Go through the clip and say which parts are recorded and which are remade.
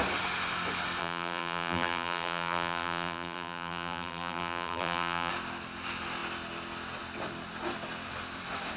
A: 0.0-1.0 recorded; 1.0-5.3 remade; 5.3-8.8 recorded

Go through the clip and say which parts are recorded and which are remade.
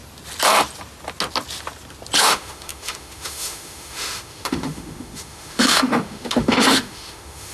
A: 0.0-2.2 recorded; 2.2-7.5 remade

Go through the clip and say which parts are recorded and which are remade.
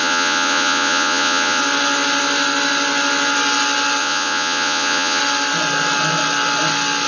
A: 0.0-1.6 remade; 1.6-4.0 recorded; 4.0-5.2 remade; 5.2-7.1 recorded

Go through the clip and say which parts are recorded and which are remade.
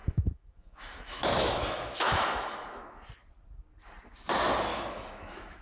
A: 0.0-3.0 remade; 3.0-4.7 recorded; 4.7-5.6 remade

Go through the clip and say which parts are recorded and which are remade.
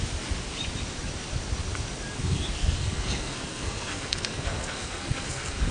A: 0.0-2.2 recorded; 2.2-5.7 remade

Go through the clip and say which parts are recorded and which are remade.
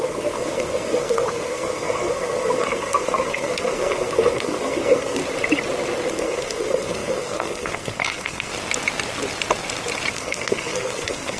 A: 0.0-5.2 remade; 5.2-6.1 recorded; 6.1-8.5 remade; 8.5-10.1 recorded; 10.1-11.4 remade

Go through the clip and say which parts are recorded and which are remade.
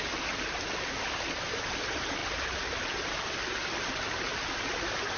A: 0.0-5.2 recorded